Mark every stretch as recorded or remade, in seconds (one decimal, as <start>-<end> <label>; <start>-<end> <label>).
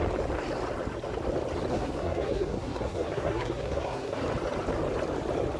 0.0-1.7 recorded; 1.7-4.2 remade; 4.2-5.6 recorded